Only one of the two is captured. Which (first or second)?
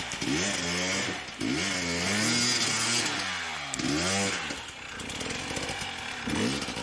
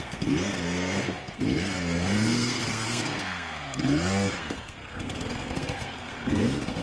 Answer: first